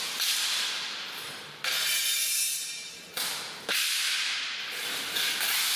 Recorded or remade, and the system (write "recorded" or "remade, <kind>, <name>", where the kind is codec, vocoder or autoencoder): remade, vocoder, BigVGAN v2